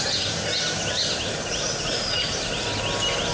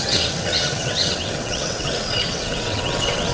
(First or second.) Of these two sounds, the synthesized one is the second